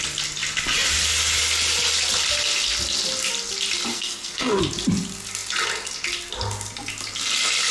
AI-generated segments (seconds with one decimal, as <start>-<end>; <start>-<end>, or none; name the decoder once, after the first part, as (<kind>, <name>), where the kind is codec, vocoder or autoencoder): 3.9-4.6 (codec, SNAC)